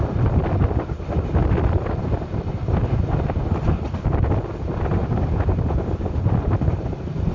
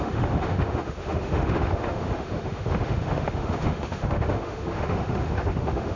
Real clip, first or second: first